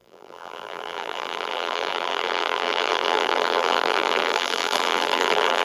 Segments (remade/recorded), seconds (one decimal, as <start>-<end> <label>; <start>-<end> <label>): 0.0-5.6 remade